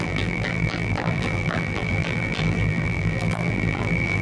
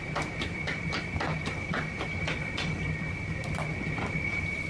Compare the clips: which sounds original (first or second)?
second